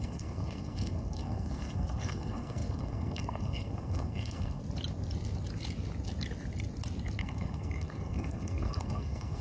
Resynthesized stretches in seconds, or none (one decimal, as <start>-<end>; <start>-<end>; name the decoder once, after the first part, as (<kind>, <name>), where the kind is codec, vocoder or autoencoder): 0.0-4.6 (codec, SNAC); 7.2-9.4